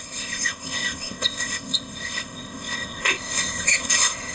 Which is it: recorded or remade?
remade